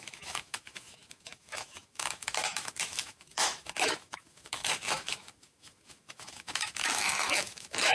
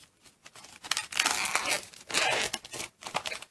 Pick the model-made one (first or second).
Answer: first